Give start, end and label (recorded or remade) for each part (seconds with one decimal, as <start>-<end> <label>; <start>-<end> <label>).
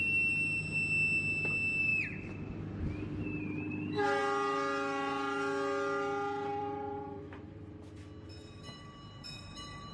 0.0-6.6 recorded; 6.6-7.6 remade; 7.6-8.4 recorded; 8.4-9.9 remade